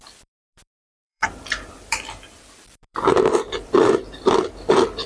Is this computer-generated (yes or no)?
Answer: yes